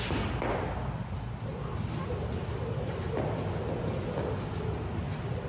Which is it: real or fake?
real